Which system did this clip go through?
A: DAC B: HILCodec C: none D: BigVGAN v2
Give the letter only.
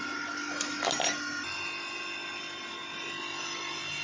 C